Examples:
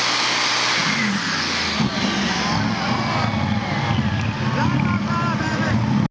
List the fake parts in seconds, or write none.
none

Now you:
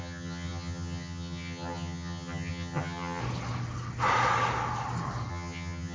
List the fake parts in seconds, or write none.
0.0-3.2; 5.3-5.9

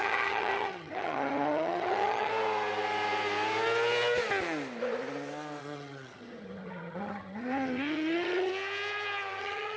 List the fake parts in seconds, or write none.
0.0-2.3; 5.6-8.5; 9.4-9.8

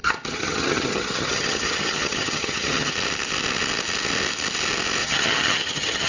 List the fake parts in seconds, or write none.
0.0-2.9; 5.0-6.1

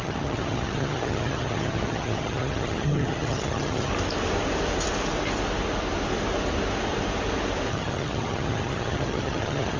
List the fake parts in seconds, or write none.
0.0-3.9; 7.7-9.8